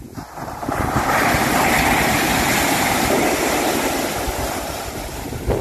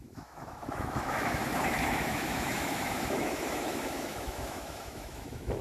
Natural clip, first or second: first